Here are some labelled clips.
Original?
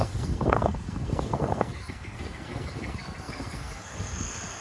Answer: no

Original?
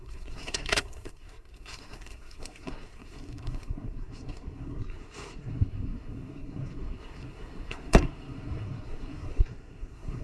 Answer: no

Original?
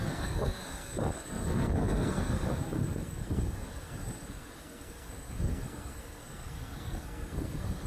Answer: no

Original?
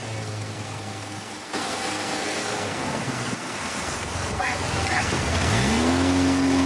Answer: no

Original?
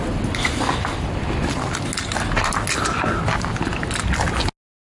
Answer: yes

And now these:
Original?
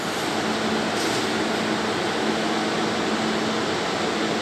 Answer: yes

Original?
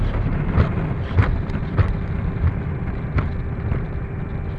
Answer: yes